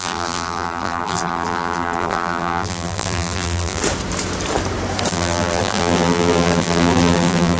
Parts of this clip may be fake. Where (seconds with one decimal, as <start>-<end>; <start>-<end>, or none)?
0.0-3.8; 5.1-7.6